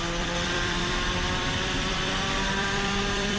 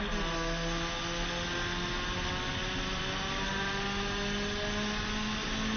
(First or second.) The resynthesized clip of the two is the first